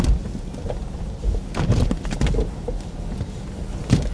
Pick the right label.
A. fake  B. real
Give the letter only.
B